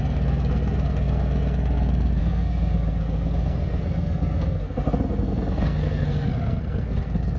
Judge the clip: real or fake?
fake